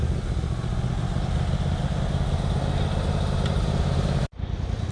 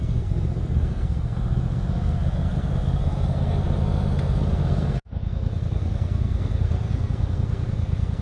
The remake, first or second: second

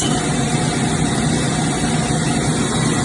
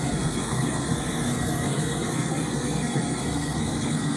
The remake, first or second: second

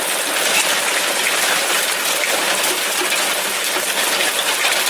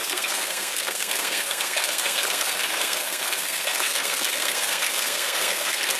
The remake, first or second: second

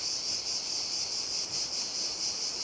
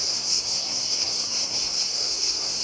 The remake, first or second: second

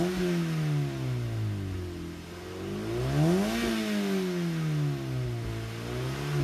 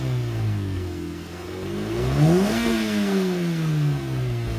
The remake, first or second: second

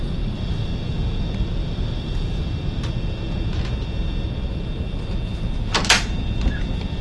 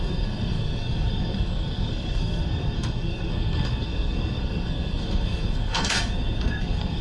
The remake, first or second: second